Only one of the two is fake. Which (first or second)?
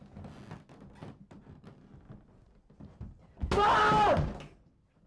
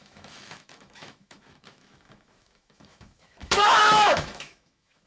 second